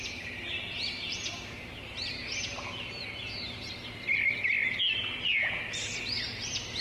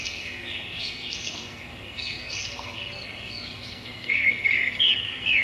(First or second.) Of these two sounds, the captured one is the first